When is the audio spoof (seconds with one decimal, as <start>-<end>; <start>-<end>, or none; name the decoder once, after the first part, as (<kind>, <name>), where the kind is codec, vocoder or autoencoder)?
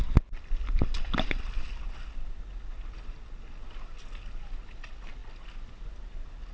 none